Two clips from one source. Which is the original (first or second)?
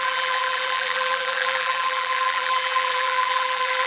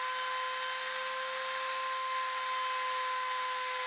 second